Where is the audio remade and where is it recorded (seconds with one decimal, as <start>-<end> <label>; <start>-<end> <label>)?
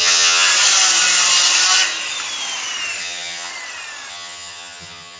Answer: 0.0-0.5 remade; 0.5-3.0 recorded; 3.0-3.5 remade; 3.5-4.1 recorded; 4.1-5.2 remade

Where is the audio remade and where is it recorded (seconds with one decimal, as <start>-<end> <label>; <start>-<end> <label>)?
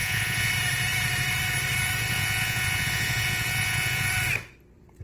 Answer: 0.0-0.5 remade; 0.5-2.0 recorded; 2.0-4.1 remade; 4.1-5.0 recorded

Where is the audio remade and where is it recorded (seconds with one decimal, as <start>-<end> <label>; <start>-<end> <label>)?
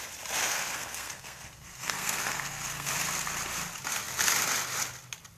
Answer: 0.0-0.4 recorded; 0.4-2.9 remade; 2.9-5.4 recorded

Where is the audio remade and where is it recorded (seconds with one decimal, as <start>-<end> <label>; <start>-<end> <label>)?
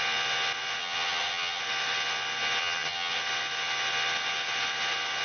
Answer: 0.0-0.8 recorded; 0.8-1.6 remade; 1.6-2.6 recorded; 2.6-3.2 remade; 3.2-5.2 recorded